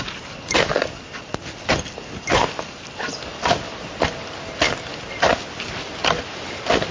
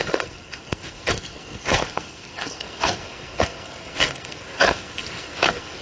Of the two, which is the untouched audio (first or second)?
first